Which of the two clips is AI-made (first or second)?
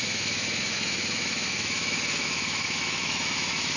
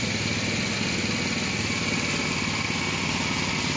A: first